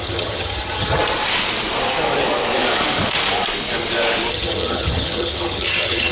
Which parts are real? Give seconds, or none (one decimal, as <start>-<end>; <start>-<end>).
1.0-4.3